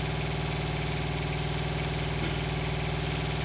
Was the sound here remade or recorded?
recorded